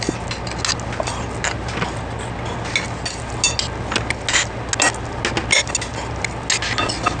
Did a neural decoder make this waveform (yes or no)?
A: no